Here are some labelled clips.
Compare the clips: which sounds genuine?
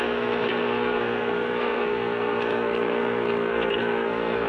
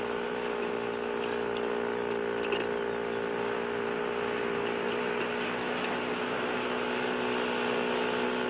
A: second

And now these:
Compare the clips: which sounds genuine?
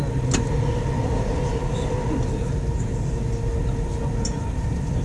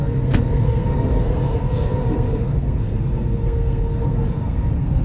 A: first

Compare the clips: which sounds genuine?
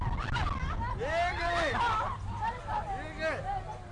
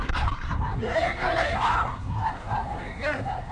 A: first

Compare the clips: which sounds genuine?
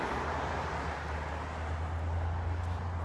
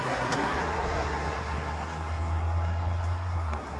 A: first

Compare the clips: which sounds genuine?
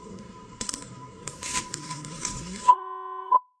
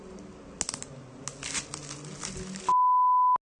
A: second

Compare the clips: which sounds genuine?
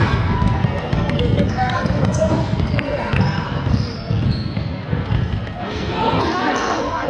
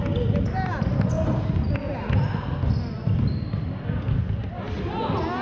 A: second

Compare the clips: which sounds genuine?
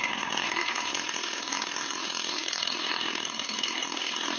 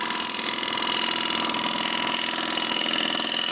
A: second